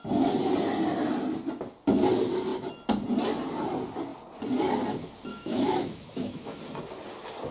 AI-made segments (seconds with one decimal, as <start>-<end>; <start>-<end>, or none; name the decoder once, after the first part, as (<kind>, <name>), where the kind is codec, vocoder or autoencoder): 5.3-6.6 (autoencoder, DAC-VAE)